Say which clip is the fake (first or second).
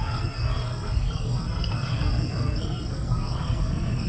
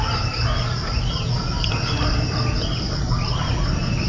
first